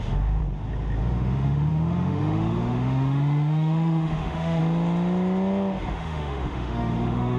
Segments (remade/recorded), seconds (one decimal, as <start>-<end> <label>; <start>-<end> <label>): 0.0-0.4 remade; 0.4-1.0 recorded; 1.0-4.6 remade; 4.6-5.9 recorded; 5.9-7.4 remade